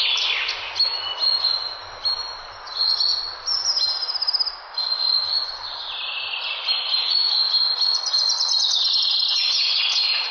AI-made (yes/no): no